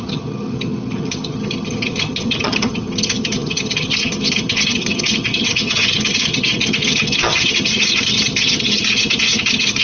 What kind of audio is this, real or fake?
fake